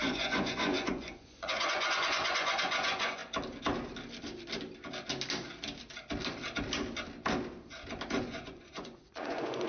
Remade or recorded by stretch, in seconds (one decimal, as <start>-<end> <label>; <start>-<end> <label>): 0.0-3.2 remade; 3.2-8.2 recorded; 8.2-9.7 remade